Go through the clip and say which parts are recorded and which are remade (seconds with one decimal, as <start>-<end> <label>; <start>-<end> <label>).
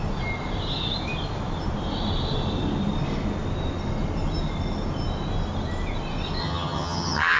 0.0-6.4 recorded; 6.4-7.4 remade